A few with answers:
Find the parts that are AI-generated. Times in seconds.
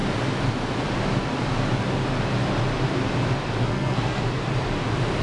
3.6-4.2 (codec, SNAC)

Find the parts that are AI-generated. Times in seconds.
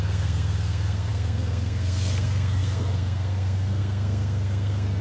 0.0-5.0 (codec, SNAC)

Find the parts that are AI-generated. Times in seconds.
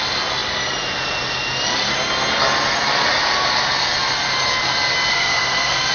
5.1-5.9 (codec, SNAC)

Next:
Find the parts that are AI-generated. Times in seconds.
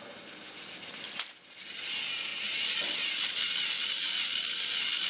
none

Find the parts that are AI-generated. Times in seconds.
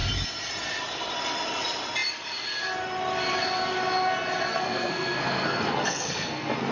4.5-6.7 (codec, SNAC)